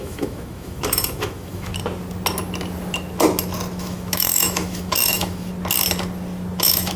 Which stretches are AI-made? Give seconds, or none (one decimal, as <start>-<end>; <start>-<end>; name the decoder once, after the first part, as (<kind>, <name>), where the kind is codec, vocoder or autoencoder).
0.0-1.7 (autoencoder, DAC-VAE); 3.8-5.5; 6.6-7.0